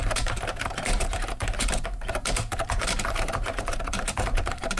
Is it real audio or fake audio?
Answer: fake